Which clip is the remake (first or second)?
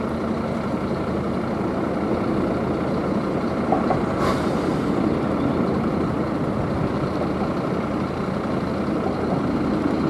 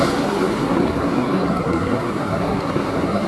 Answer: second